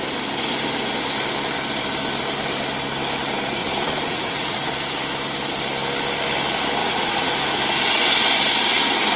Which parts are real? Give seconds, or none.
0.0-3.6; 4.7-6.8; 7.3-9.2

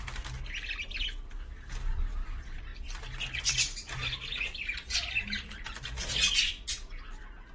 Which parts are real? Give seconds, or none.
0.0-7.5

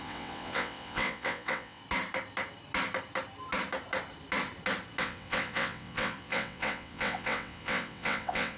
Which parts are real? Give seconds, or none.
1.8-5.0

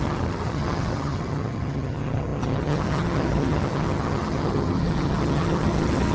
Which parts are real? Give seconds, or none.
none